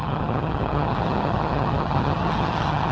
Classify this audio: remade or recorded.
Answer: remade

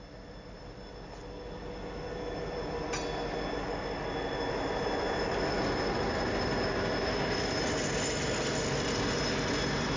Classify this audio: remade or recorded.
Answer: recorded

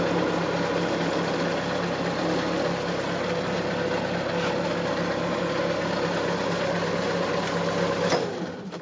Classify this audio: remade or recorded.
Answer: recorded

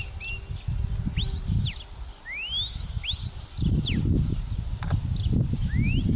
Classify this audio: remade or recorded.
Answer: recorded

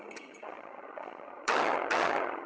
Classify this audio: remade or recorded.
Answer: remade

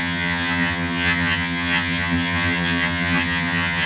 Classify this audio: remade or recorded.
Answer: remade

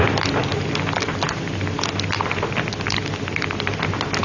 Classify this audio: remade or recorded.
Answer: recorded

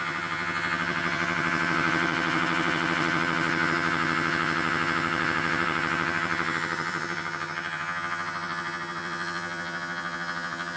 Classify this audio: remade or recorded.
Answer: remade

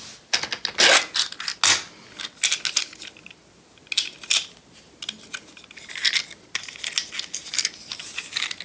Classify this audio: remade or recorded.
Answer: recorded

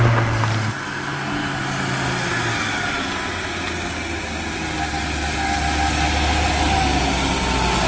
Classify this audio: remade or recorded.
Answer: recorded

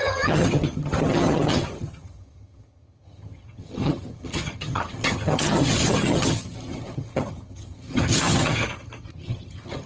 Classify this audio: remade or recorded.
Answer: remade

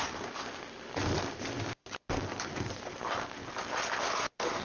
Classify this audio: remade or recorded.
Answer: recorded